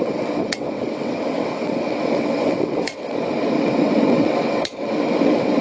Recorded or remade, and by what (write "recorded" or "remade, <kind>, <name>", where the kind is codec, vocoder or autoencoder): remade, vocoder, WaveNeXt